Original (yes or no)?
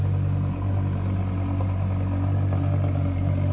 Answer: yes